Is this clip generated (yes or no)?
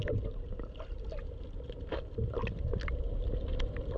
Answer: no